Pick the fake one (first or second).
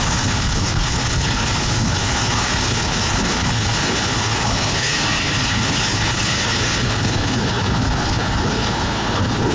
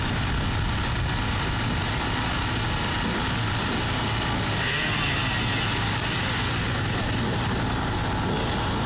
first